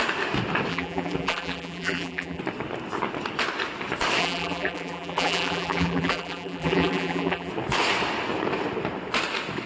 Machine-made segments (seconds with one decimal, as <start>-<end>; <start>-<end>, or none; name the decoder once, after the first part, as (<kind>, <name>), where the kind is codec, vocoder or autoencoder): 0.7-2.4 (vocoder, BigVGAN v2); 4.2-7.5